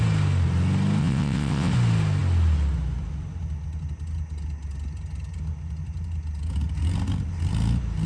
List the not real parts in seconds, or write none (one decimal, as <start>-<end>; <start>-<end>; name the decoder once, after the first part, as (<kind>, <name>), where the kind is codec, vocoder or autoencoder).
1.0-1.7 (vocoder, WaveNeXt)